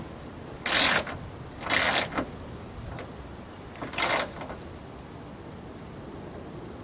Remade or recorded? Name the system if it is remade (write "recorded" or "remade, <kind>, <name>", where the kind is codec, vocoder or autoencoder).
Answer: recorded